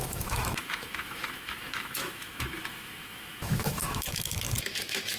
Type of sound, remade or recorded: remade